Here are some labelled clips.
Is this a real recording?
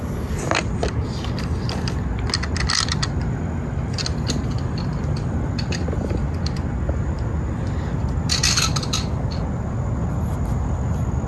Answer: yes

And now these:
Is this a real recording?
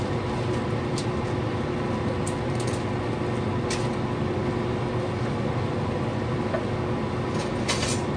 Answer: yes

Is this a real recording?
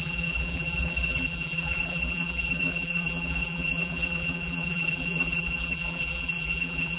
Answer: no